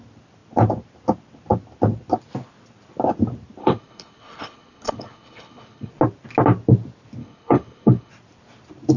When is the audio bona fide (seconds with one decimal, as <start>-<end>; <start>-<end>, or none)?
0.0-3.6; 5.9-7.2; 8.1-9.0